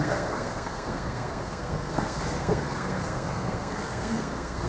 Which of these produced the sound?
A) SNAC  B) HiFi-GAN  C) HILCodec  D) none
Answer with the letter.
A